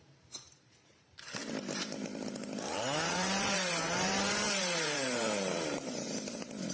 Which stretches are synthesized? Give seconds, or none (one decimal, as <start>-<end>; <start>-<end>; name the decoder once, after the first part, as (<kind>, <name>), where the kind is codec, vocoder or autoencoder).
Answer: 0.0-6.7 (vocoder, BigVGAN v2)